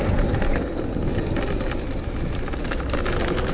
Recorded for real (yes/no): yes